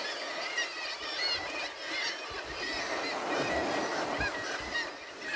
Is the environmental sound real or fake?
fake